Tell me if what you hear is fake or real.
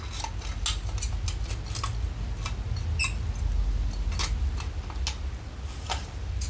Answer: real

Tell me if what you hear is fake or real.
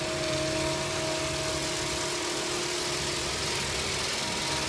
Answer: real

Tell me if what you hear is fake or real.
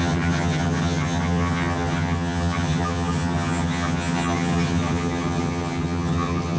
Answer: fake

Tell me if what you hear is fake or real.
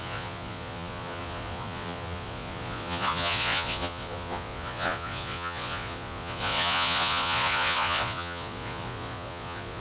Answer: fake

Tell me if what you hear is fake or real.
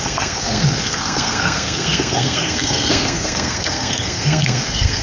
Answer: fake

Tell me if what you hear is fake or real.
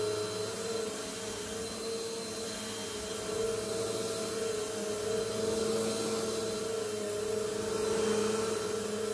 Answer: real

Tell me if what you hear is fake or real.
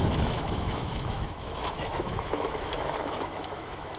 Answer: fake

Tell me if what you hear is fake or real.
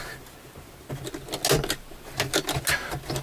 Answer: real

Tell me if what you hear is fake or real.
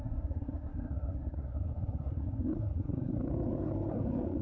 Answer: fake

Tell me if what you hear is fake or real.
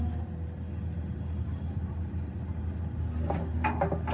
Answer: real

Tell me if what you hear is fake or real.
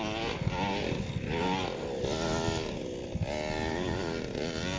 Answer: real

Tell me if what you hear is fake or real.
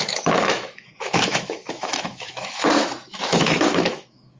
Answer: fake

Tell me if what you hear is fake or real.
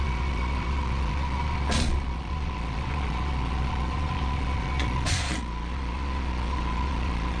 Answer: fake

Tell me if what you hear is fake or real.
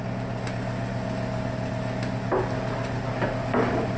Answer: real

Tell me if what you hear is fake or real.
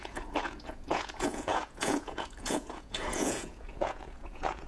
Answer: fake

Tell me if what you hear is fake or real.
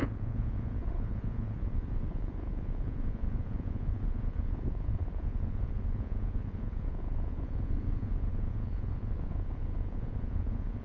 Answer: fake